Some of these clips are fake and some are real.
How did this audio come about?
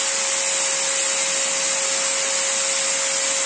real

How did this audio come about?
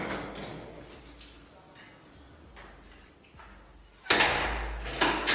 real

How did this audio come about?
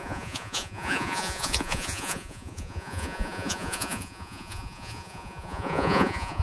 fake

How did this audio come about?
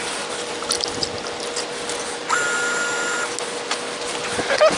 real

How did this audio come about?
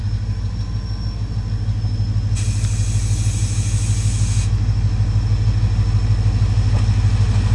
real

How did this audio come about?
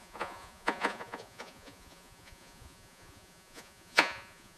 fake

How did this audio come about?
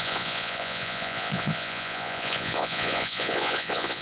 fake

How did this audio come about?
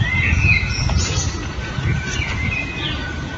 fake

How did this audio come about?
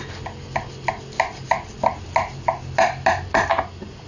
real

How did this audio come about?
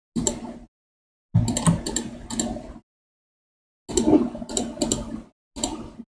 real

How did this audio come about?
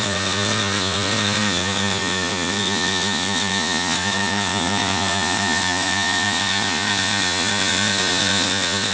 fake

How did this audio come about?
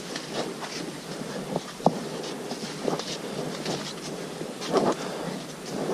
real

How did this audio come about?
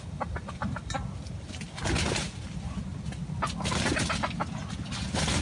real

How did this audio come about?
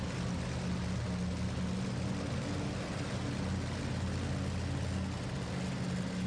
real